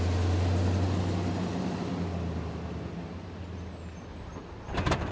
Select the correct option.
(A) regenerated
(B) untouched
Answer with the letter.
B